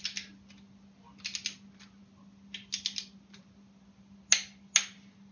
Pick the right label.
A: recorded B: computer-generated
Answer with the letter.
A